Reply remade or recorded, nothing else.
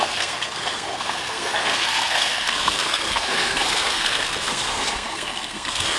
remade